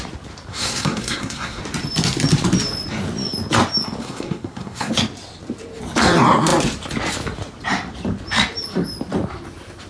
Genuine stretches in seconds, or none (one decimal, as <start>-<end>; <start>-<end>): 0.0-0.5; 1.6-4.0; 4.9-9.9